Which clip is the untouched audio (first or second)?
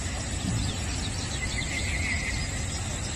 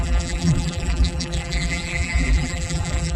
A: first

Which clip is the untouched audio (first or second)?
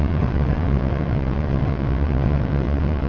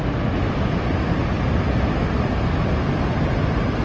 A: second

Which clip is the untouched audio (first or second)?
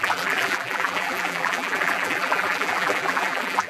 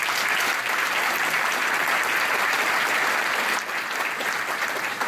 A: second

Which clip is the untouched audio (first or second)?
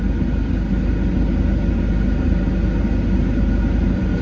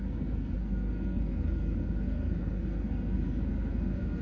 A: first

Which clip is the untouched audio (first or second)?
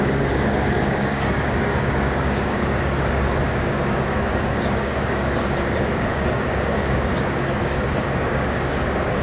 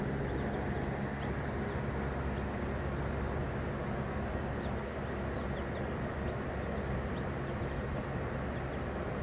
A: second